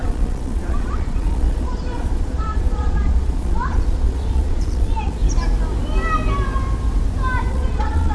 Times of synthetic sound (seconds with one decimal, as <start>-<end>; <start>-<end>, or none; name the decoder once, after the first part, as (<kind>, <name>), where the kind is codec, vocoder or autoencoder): 0.0-5.2 (vocoder, Vocos); 7.5-8.1